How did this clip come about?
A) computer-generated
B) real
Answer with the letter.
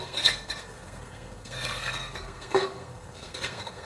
A